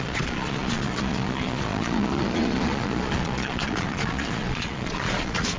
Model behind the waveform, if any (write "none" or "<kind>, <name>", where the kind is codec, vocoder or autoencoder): vocoder, Vocos